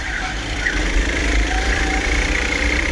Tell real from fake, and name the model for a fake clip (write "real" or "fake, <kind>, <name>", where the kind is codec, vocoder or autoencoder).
fake, vocoder, BigVGAN v2